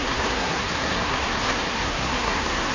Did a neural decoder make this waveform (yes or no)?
yes